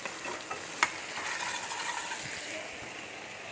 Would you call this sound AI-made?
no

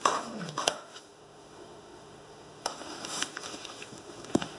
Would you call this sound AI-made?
yes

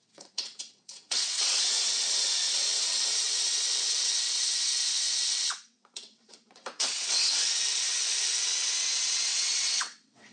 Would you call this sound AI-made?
yes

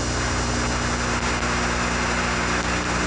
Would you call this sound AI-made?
no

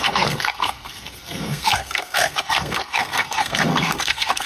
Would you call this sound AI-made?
yes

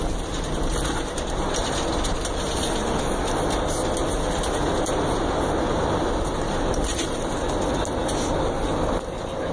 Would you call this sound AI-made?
no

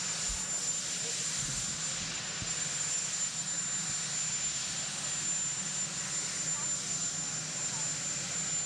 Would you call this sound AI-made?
no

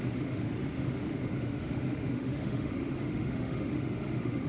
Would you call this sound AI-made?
yes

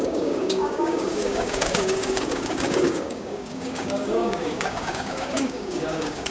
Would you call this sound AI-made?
yes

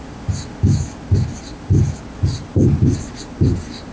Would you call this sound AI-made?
yes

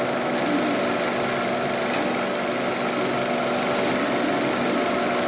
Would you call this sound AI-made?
no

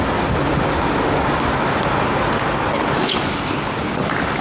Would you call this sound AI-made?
no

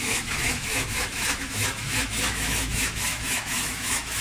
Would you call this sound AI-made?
yes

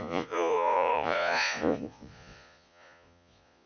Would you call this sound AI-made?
yes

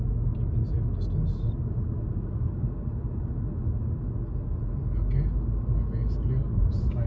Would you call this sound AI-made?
no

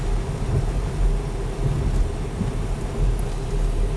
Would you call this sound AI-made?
no